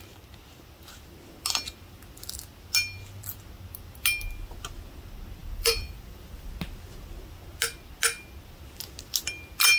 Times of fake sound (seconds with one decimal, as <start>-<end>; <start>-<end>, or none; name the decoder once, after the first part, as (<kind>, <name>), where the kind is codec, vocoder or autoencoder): 5.4-6.5 (vocoder, BigVGAN v2)